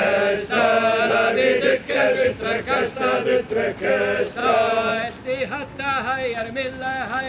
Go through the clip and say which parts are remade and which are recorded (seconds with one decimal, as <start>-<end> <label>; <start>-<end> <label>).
0.0-1.7 recorded; 1.7-2.3 remade; 2.3-7.3 recorded